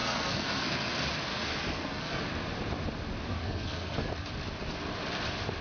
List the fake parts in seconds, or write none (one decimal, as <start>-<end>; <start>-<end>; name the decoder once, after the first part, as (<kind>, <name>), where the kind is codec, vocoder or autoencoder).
0.0-0.9 (codec, SNAC); 1.3-2.2; 3.4-4.1